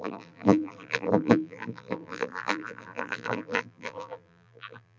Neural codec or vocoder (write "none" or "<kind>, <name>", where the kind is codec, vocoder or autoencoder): vocoder, BigVGAN v2